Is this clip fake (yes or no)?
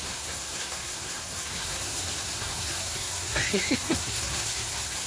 yes